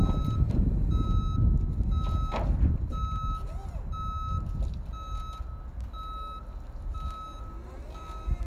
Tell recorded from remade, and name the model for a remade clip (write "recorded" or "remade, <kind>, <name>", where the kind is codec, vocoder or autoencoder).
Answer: recorded